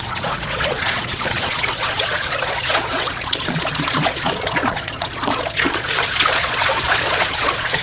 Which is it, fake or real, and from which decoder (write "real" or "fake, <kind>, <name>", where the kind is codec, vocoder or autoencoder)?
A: fake, vocoder, Vocos